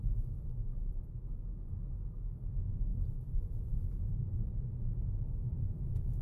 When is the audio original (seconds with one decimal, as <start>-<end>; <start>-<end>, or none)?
1.0-2.9; 4.7-6.2